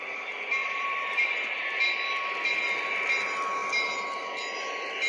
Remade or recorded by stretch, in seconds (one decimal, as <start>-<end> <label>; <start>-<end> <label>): 0.0-0.6 recorded; 0.6-1.8 remade; 1.8-5.1 recorded